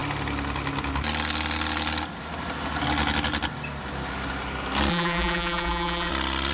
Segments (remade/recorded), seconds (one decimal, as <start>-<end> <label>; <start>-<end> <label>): 0.0-4.9 recorded; 4.9-6.1 remade; 6.1-6.5 recorded